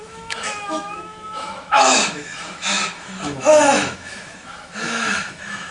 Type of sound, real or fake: fake